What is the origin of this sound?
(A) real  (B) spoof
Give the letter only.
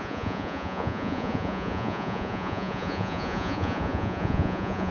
B